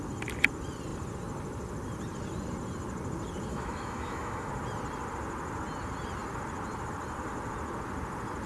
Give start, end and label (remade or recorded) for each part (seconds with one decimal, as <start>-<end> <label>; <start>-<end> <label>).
0.0-3.5 recorded; 3.5-4.5 remade; 4.5-8.5 recorded